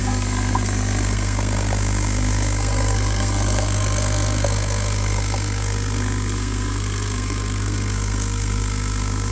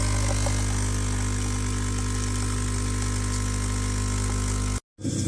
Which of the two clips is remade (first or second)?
first